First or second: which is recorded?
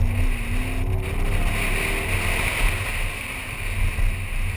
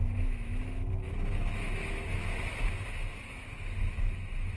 first